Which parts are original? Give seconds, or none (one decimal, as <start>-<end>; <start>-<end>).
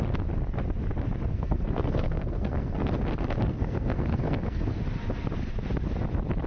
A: 0.0-1.3; 2.9-3.5; 4.8-6.5